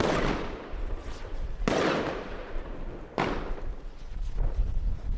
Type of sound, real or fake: real